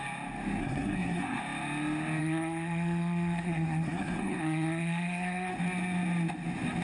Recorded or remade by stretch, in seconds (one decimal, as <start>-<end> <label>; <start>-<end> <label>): 0.0-0.6 recorded; 0.6-1.4 remade; 1.4-2.2 recorded; 2.2-5.5 remade; 5.5-6.8 recorded